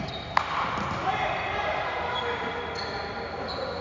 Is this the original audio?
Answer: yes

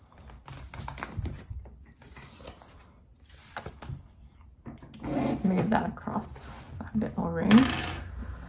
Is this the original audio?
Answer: yes